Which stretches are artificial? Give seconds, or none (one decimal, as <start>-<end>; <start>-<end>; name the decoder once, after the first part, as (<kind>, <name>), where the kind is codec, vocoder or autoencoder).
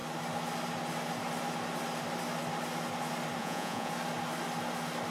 3.4-3.9 (vocoder, Vocos)